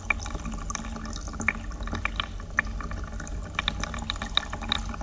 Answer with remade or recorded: recorded